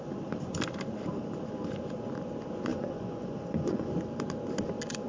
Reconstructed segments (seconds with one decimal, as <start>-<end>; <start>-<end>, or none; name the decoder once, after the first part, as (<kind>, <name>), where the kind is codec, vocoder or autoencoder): 2.7-3.9 (vocoder, Vocos)